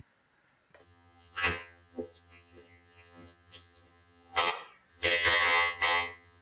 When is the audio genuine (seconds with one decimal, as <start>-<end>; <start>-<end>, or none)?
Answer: 0.0-0.8; 4.5-4.9